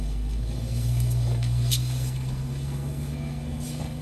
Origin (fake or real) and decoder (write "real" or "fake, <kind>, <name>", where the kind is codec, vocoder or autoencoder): fake, codec, SNAC